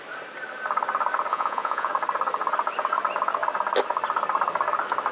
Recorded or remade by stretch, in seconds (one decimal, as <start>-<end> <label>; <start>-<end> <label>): 0.0-1.3 recorded; 1.3-1.9 remade; 1.9-5.1 recorded